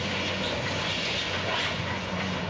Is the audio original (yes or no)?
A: no